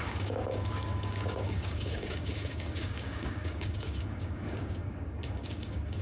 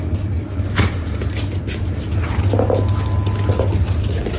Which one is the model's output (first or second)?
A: first